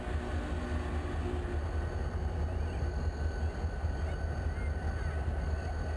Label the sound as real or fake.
real